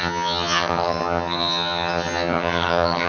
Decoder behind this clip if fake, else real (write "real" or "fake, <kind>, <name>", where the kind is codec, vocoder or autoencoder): fake, vocoder, HiFi-GAN